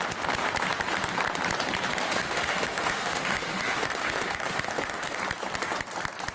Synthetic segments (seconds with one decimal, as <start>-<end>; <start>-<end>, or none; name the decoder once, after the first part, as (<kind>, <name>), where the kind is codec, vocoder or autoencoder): 2.0-5.2 (autoencoder, DAC-VAE)